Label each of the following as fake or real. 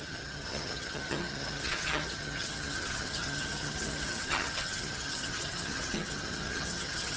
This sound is fake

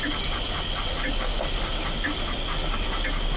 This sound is real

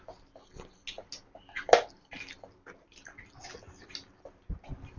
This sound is real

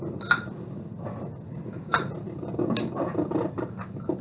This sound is real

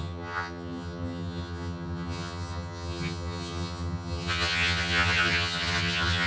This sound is fake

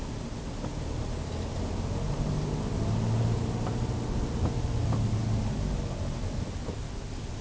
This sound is real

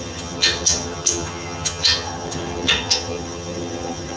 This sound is fake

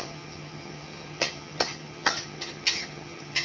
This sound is fake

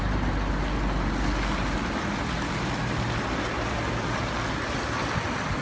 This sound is real